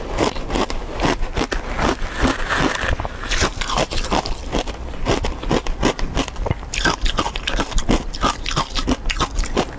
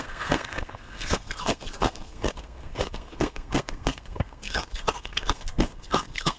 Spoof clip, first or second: second